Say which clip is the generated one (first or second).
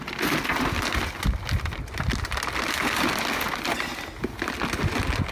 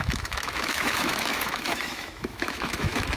second